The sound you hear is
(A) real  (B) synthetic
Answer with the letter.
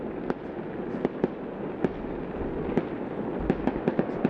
A